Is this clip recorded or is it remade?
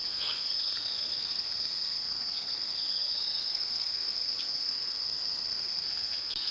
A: remade